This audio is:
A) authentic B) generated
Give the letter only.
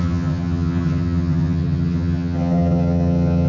B